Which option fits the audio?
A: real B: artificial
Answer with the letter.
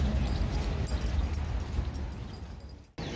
A